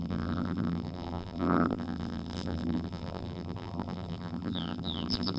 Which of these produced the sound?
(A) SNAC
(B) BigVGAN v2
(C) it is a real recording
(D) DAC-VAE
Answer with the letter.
B